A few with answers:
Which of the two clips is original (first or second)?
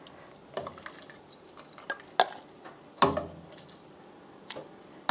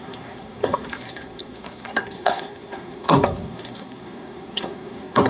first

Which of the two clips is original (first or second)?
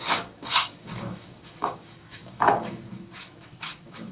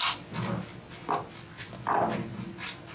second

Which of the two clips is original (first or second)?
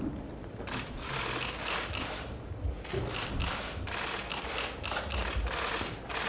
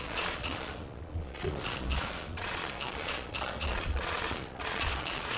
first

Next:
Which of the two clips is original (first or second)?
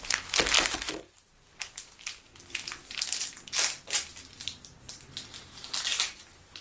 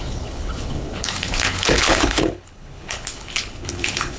first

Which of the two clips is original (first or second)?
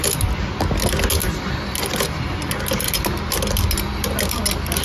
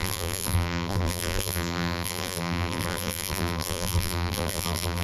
first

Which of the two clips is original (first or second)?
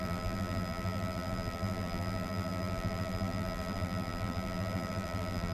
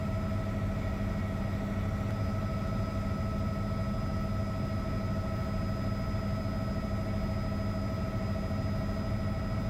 second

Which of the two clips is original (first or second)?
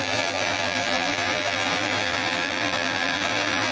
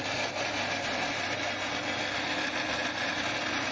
second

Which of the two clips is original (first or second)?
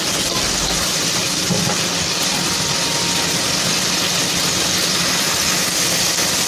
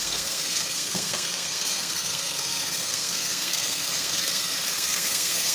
first